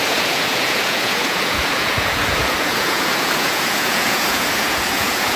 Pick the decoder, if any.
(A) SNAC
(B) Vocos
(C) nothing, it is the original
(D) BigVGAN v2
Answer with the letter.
B